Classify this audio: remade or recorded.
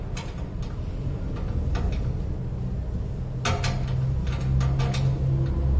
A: recorded